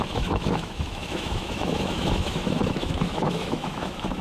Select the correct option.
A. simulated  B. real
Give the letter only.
A